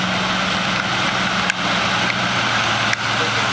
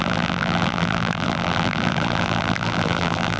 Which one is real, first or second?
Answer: first